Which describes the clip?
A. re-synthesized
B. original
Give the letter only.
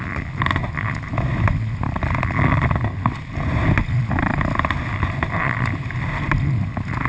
B